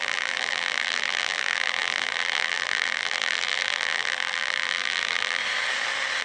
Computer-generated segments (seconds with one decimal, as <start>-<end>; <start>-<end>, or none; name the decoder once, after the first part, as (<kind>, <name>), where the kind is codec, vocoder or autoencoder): 0.0-5.4 (vocoder, BigVGAN v2)